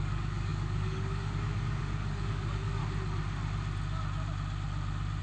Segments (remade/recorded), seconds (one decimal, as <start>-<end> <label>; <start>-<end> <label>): 0.0-2.8 remade; 2.8-5.2 recorded